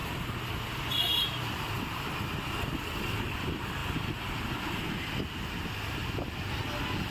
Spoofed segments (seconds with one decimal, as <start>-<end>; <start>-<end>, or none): 0.0-1.7; 3.8-4.9